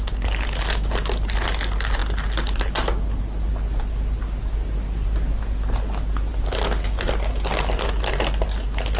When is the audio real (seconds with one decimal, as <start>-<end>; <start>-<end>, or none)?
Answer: 0.0-9.0